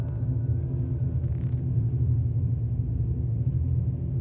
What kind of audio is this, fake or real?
real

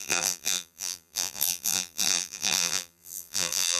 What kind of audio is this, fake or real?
fake